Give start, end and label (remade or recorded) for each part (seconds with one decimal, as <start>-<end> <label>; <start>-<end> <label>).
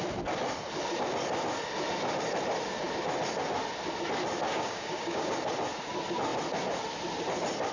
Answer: 0.0-4.5 recorded; 4.5-5.3 remade; 5.3-7.7 recorded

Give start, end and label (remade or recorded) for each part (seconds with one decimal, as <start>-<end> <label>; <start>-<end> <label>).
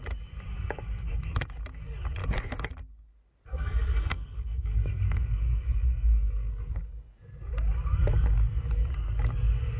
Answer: 0.0-3.5 recorded; 3.5-6.8 remade; 6.8-9.8 recorded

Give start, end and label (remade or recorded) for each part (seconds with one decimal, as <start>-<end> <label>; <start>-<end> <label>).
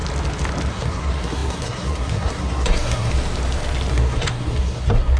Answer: 0.0-0.7 recorded; 0.7-3.1 remade; 3.1-3.9 recorded; 3.9-5.2 remade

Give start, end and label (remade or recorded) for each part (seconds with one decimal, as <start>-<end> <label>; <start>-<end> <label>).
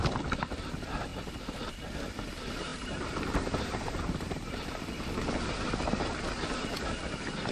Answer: 0.0-2.7 recorded; 2.7-4.8 remade; 4.8-7.5 recorded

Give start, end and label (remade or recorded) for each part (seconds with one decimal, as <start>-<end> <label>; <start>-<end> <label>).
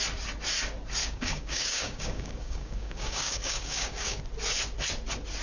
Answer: 0.0-1.0 recorded; 1.0-4.2 remade; 4.2-5.4 recorded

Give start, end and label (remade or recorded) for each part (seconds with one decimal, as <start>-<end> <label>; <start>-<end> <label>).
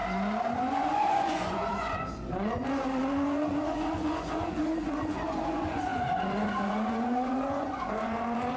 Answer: 0.0-0.7 recorded; 0.7-8.6 remade